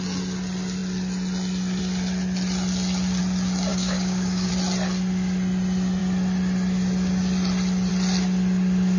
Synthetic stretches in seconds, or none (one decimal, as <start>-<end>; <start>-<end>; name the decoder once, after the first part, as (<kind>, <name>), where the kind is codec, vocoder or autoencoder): 3.7-4.5 (codec, DAC)